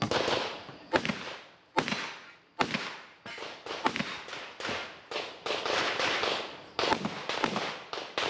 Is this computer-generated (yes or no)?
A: no